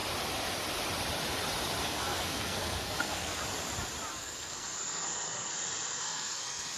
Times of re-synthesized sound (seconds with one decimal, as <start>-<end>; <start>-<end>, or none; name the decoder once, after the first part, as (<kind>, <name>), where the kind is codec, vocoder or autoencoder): 1.8-3.4 (codec, SNAC); 4.1-5.5; 6.0-6.8

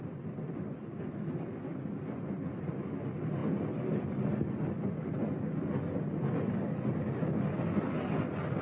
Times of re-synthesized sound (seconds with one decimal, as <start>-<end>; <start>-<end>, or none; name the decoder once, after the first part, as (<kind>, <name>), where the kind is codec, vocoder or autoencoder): none

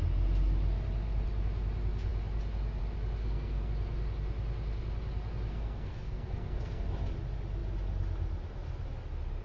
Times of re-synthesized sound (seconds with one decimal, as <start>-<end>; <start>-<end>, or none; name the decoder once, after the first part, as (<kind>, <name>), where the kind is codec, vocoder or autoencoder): 3.2-3.7 (codec, SNAC); 5.5-6.9

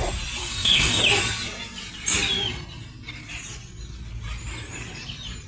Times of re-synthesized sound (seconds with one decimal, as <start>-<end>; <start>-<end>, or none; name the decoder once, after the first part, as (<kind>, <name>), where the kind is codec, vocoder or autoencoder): 0.4-1.0 (codec, SNAC)

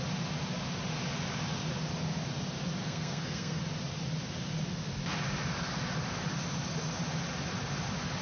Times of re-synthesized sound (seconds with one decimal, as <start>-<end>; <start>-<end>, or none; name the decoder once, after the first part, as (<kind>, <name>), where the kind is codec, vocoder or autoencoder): 2.8-3.6 (codec, SNAC)

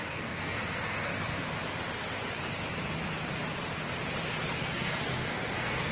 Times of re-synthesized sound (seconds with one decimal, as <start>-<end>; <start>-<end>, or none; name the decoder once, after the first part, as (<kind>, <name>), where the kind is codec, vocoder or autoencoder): 0.0-1.1 (codec, SNAC); 4.6-5.9